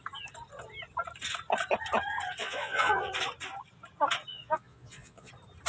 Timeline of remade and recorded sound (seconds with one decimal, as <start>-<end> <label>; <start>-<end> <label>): 0.0-2.4 recorded; 2.4-3.1 remade; 3.1-4.3 recorded; 4.3-5.3 remade; 5.3-5.7 recorded